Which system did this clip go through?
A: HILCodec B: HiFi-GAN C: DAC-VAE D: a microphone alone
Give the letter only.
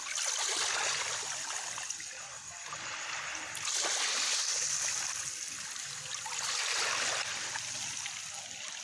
D